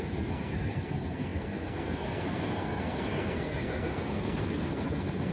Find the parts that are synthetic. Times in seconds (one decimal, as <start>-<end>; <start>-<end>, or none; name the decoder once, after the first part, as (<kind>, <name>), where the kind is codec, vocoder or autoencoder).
0.0-5.3 (codec, SNAC)